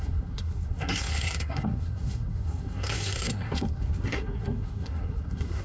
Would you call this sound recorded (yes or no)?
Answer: no